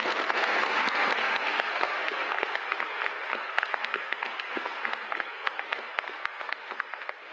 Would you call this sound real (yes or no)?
no